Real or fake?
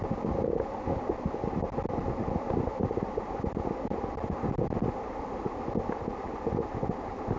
real